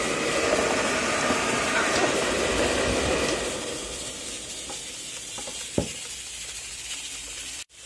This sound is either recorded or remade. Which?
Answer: recorded